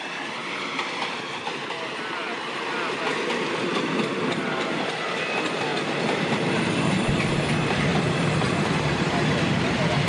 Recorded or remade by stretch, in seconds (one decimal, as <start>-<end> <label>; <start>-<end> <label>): 0.0-5.7 remade; 5.7-6.5 recorded; 6.5-10.1 remade

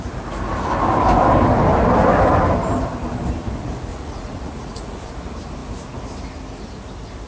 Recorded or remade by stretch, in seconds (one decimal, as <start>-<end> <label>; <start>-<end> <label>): 0.0-3.9 recorded; 3.9-5.1 remade; 5.1-7.3 recorded

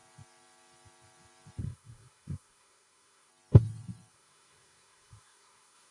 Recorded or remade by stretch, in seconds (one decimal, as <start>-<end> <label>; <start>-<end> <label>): 0.0-1.6 recorded; 1.6-3.3 remade; 3.3-4.1 recorded; 4.1-5.9 remade

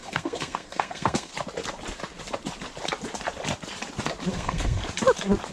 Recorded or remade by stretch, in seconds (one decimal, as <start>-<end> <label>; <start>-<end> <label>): 0.0-1.3 remade; 1.3-4.3 recorded; 4.3-4.8 remade; 4.8-5.5 recorded

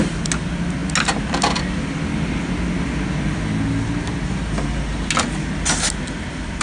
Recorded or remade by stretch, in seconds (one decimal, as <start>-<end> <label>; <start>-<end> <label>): 0.0-6.6 recorded

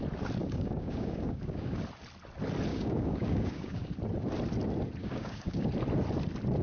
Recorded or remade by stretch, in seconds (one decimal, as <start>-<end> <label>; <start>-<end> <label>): 0.0-0.4 recorded; 0.4-1.8 remade; 1.8-2.7 recorded; 2.7-3.9 remade; 3.9-5.0 recorded; 5.0-5.7 remade; 5.7-6.6 recorded

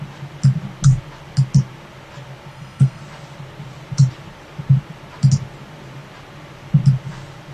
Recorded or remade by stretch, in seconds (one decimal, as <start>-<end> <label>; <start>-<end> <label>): 0.0-2.5 recorded; 2.5-3.0 remade; 3.0-7.5 recorded

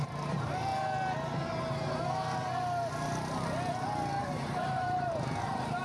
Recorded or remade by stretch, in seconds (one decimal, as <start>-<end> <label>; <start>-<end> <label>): 0.0-0.7 remade; 0.7-4.2 recorded; 4.2-5.8 remade